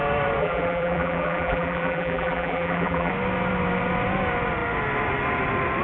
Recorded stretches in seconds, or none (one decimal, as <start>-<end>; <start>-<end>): 0.0-0.4; 3.1-5.8